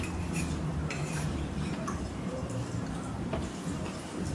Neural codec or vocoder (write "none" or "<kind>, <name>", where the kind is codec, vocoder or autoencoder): vocoder, BigVGAN v2